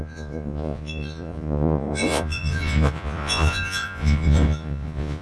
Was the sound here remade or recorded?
remade